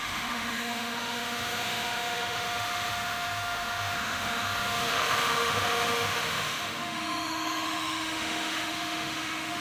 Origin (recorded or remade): remade